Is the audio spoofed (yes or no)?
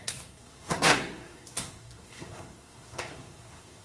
yes